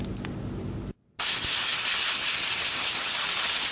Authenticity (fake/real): real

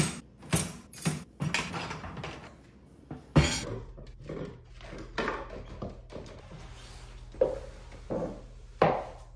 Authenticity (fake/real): real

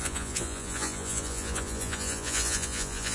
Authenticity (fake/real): fake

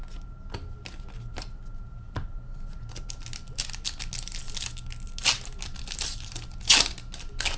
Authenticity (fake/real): real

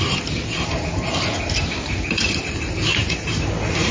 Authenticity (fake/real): real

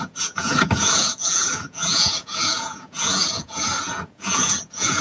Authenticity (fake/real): fake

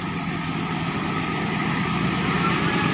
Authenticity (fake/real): real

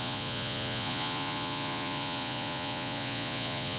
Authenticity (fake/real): fake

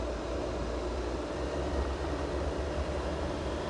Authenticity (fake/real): real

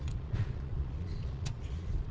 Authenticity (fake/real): fake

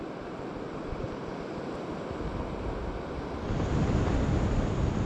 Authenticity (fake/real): real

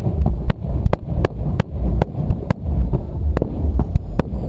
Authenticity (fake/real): real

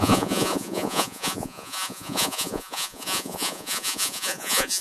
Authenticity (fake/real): fake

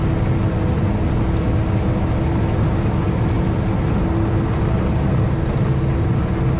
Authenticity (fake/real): real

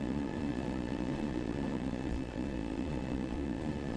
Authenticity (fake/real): fake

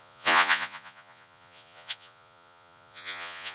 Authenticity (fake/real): fake